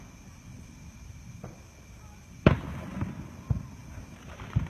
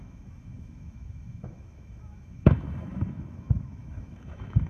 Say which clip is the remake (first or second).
second